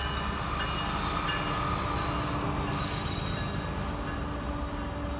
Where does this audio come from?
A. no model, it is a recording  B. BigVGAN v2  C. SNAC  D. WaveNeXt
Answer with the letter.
A